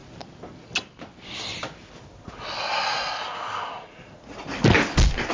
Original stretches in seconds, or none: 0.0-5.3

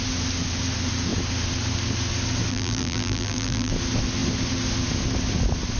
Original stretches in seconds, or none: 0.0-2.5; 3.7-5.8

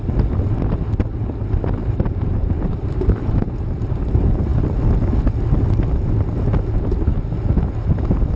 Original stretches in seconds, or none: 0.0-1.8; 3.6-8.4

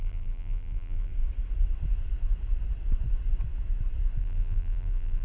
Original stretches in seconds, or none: 1.1-4.2

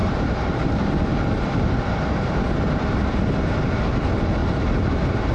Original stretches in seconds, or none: 3.2-4.4

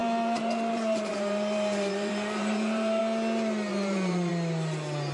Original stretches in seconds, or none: 3.0-3.7; 4.3-5.1

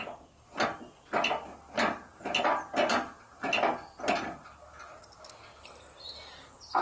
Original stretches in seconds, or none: 0.0-6.8